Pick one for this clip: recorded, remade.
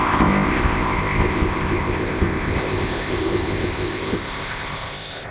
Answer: remade